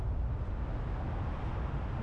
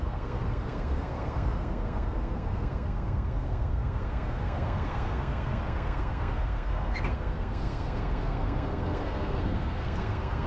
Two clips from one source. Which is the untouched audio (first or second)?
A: first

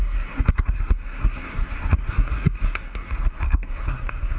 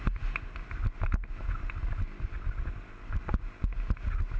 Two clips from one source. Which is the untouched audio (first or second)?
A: second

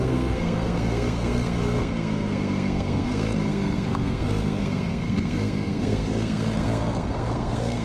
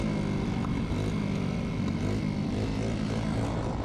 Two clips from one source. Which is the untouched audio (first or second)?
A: second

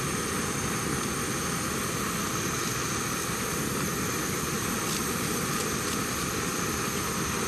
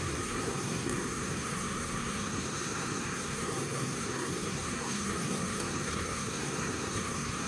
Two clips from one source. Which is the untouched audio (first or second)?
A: first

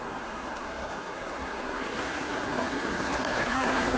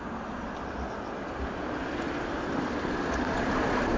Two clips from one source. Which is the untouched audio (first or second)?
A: second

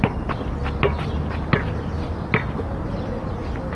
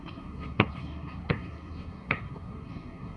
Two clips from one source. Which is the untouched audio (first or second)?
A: first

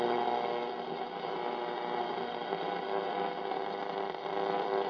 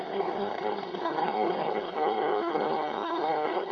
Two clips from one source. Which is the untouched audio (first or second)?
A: first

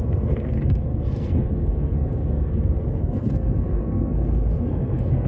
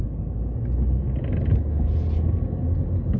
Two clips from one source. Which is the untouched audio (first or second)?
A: second